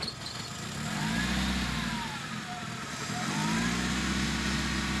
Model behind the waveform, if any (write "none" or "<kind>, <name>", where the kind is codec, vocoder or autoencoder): none